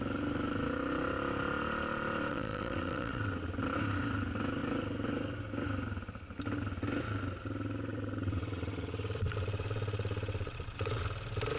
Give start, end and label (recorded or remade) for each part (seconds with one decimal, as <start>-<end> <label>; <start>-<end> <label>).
0.0-2.3 recorded; 2.3-3.5 remade; 3.5-7.9 recorded; 7.9-11.0 remade; 11.0-11.6 recorded